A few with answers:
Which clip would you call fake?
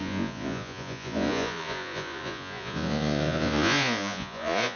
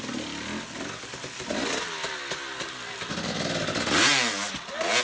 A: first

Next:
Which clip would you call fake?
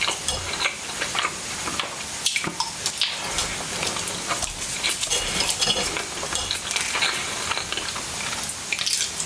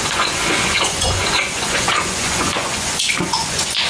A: second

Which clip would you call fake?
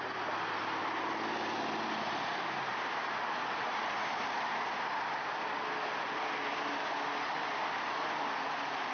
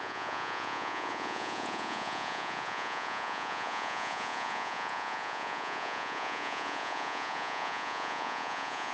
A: second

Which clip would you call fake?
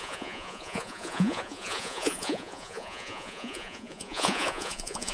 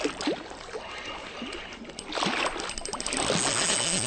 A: first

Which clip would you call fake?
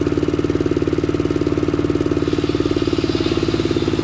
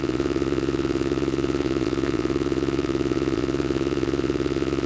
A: second